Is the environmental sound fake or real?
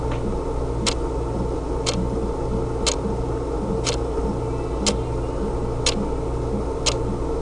real